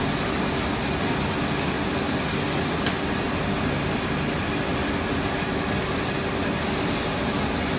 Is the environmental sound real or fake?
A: real